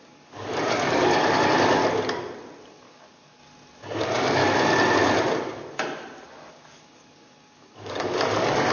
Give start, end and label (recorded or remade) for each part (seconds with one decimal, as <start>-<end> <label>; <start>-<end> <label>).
0.0-1.8 remade; 1.8-2.7 recorded; 2.7-3.4 remade; 3.4-4.0 recorded; 4.0-4.4 remade; 4.4-6.5 recorded; 6.5-8.7 remade